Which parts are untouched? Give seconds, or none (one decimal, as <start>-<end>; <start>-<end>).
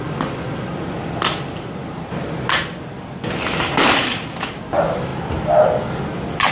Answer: 0.0-1.8; 4.5-6.5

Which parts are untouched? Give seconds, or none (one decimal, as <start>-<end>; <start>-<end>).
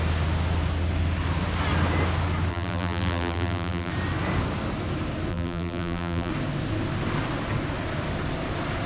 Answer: 0.0-2.5; 3.9-5.3; 6.3-8.9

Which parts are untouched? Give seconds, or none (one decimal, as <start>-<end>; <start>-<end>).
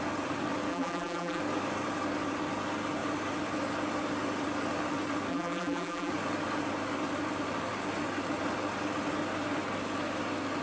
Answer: 0.0-0.7; 1.4-5.3; 6.1-10.6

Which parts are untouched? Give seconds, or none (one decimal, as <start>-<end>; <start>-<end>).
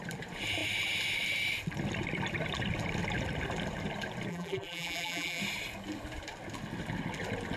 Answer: 0.0-4.3; 5.4-7.6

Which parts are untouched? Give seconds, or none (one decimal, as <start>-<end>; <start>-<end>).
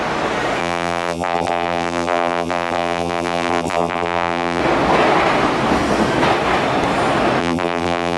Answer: 0.0-0.6; 4.6-7.4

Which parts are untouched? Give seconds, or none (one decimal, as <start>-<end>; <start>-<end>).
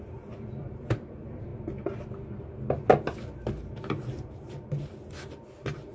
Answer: 1.5-3.6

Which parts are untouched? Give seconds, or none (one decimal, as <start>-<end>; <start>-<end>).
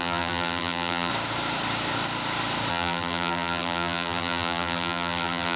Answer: 1.1-2.7